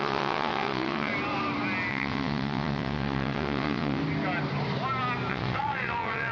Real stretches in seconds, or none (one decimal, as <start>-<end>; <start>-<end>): 1.1-1.9; 4.0-5.3